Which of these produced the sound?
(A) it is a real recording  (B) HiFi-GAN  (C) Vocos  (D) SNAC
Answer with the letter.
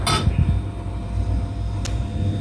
A